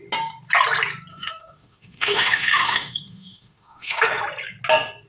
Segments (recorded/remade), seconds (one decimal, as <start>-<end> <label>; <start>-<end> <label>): 0.0-1.1 recorded; 1.1-4.2 remade; 4.2-5.1 recorded